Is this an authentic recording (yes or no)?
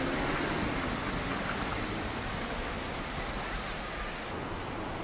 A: yes